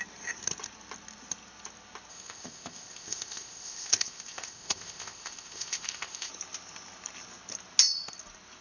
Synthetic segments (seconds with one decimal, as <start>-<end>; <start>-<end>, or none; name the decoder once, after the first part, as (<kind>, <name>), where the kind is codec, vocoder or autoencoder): 2.1-6.3 (codec, ZipCodec)